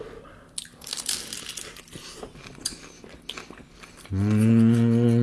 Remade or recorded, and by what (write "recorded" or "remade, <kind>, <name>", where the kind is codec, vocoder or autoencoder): recorded